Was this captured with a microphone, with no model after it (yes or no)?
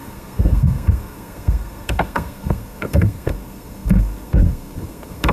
no